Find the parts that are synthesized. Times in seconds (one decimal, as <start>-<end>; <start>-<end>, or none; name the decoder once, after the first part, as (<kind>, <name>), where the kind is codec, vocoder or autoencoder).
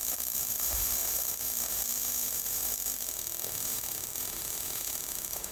0.0-5.5 (autoencoder, DAC-VAE)